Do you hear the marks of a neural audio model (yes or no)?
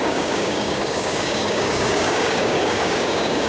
yes